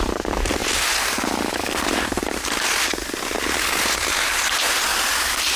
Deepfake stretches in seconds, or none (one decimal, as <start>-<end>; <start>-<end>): none